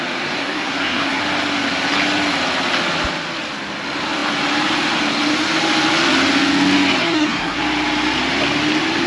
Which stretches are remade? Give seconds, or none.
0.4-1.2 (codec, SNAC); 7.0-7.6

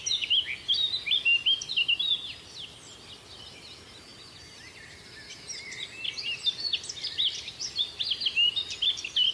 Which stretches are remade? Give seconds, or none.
none

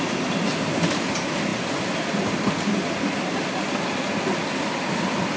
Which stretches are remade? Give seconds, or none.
none

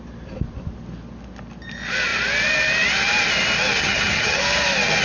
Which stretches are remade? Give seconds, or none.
3.8-4.4 (vocoder, HiFi-GAN)